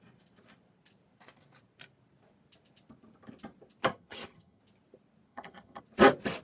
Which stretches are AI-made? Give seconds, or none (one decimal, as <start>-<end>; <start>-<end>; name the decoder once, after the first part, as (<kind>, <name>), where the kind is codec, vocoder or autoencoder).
3.9-4.6 (vocoder, HiFi-GAN); 5.3-5.8